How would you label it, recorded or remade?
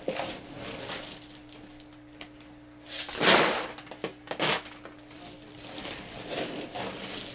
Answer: recorded